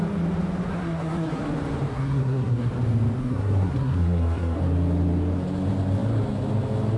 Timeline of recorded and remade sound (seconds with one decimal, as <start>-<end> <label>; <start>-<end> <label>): 0.0-0.7 recorded; 0.7-1.4 remade; 1.4-1.9 recorded; 1.9-2.7 remade; 2.7-3.2 recorded; 3.2-4.6 remade; 4.6-7.0 recorded